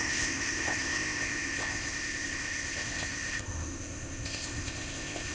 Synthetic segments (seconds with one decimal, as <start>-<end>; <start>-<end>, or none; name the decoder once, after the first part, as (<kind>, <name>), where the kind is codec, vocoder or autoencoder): 0.0-5.3 (codec, ZipCodec)